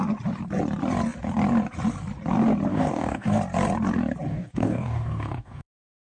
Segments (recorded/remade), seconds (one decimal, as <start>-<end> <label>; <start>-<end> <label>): 0.0-2.7 recorded; 2.7-3.4 remade; 3.4-4.3 recorded; 4.3-6.2 remade